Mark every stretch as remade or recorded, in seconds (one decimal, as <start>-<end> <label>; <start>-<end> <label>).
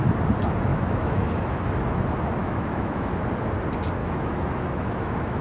0.0-0.7 recorded; 0.7-1.3 remade; 1.3-2.4 recorded; 2.4-3.1 remade; 3.1-4.0 recorded; 4.0-5.4 remade